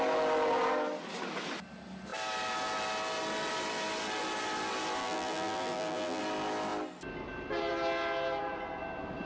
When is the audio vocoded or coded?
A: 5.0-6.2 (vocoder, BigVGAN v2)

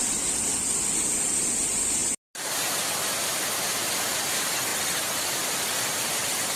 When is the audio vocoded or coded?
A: none

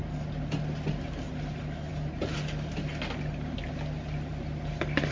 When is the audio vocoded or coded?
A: none

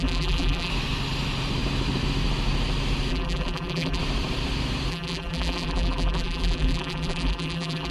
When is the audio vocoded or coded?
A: 0.0-0.7 (vocoder, BigVGAN v2); 3.1-4.0; 4.9-7.9

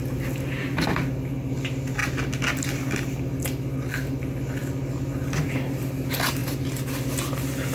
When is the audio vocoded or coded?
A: none

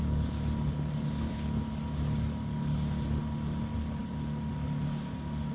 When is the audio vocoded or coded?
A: none

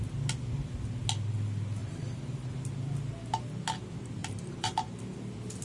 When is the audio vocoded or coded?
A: 1.8-2.6 (vocoder, BigVGAN v2); 4.2-5.0

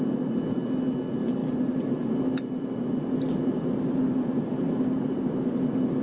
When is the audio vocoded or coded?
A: 1.4-4.1 (vocoder, BigVGAN v2); 4.6-5.2